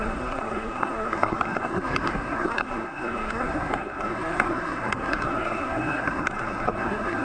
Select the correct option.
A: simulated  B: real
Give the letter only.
A